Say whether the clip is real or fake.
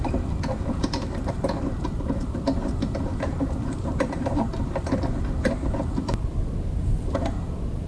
real